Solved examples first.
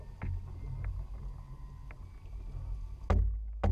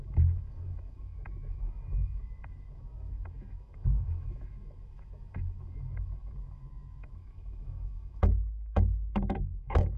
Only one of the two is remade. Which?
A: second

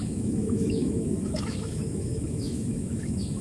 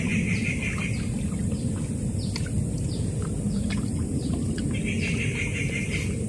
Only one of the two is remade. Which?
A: first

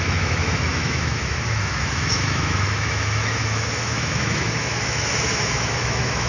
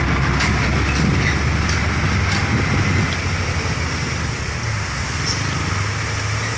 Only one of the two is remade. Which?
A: first